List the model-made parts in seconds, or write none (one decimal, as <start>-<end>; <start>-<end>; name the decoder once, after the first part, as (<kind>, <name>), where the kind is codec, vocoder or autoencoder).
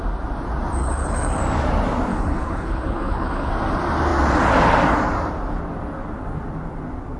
0.8-1.4 (codec, HILCodec); 2.1-3.5